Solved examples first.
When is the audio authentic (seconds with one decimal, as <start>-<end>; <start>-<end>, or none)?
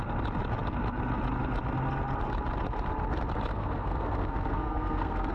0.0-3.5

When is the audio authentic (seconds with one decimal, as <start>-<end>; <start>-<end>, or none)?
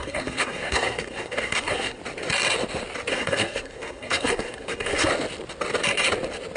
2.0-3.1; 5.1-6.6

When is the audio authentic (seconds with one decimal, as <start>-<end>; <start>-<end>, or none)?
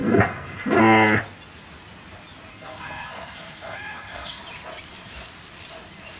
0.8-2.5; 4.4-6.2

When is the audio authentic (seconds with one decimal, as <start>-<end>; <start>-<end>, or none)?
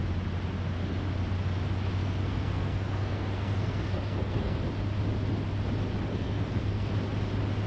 0.0-2.0; 4.6-6.1; 6.9-7.7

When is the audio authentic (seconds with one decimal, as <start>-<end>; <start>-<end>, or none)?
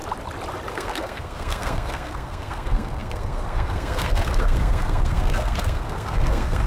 0.0-0.7